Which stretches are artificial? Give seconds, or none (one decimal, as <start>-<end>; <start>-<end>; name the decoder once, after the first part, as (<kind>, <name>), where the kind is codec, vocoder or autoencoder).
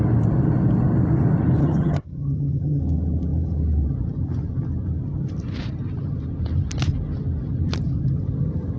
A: 1.6-2.8 (vocoder, HiFi-GAN)